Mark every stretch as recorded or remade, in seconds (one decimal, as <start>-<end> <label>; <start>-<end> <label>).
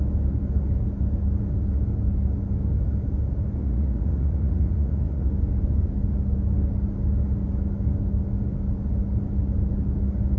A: 0.0-3.6 recorded; 3.6-5.3 remade; 5.3-10.4 recorded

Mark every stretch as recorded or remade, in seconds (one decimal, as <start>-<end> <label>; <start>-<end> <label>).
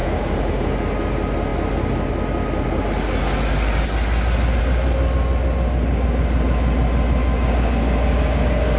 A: 0.0-0.5 remade; 0.5-7.2 recorded; 7.2-8.8 remade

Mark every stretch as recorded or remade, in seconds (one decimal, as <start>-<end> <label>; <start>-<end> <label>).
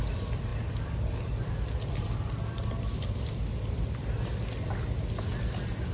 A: 0.0-5.9 recorded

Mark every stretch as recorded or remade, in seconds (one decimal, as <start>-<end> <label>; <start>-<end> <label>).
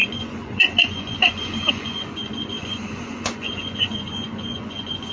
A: 0.0-5.1 remade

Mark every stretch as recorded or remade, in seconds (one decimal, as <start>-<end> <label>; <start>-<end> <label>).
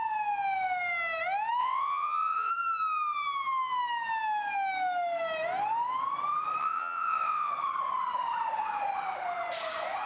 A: 0.0-1.6 recorded; 1.6-2.5 remade; 2.5-6.6 recorded; 6.6-7.5 remade; 7.5-10.1 recorded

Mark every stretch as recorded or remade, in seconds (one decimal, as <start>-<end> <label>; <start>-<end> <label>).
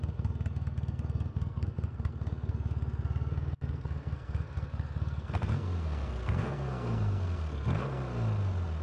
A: 0.0-8.0 remade; 8.0-8.8 recorded